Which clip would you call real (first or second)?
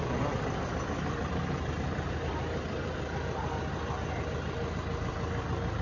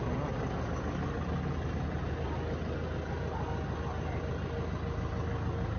second